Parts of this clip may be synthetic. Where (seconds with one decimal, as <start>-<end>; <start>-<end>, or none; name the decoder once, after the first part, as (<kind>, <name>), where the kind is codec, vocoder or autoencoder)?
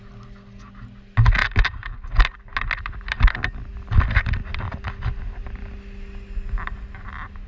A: none